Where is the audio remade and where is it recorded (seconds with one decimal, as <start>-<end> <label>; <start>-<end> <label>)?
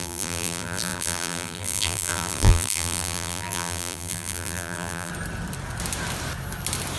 0.0-5.1 remade; 5.1-7.0 recorded